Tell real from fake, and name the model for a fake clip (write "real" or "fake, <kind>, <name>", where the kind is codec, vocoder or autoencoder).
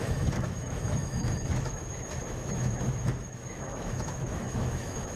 fake, autoencoder, DAC-VAE